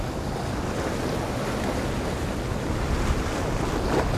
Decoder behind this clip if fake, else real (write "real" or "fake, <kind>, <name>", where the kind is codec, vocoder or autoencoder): real